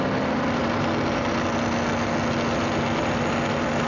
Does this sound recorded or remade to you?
recorded